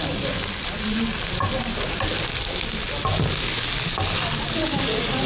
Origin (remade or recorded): recorded